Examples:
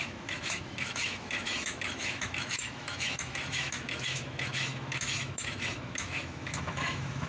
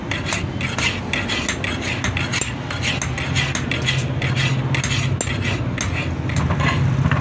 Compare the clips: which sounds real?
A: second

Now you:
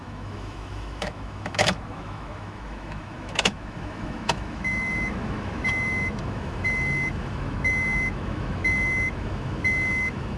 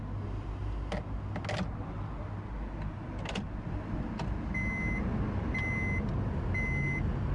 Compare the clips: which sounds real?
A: second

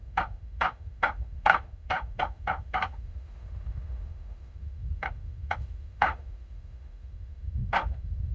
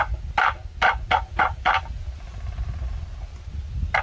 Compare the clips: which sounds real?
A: second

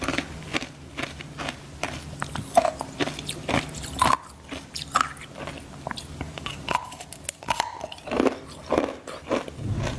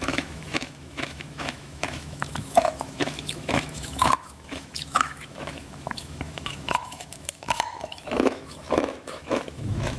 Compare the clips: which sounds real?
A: first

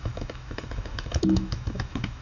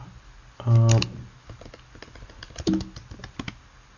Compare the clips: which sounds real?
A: second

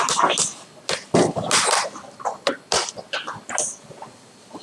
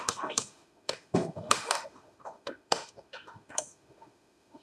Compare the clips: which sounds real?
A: first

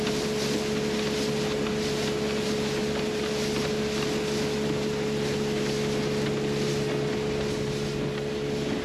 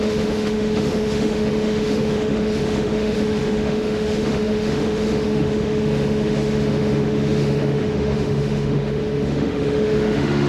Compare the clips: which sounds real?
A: first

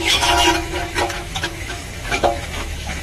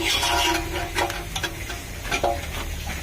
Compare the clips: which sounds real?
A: second